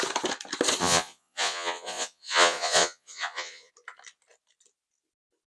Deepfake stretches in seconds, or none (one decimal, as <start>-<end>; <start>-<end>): 0.8-3.7